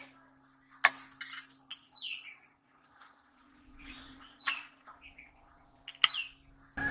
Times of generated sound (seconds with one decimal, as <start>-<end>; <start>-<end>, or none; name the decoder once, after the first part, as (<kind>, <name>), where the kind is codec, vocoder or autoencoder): 1.7-5.8 (vocoder, Vocos)